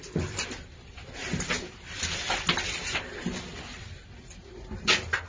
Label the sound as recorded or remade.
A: recorded